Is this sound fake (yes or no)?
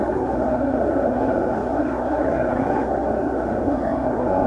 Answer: yes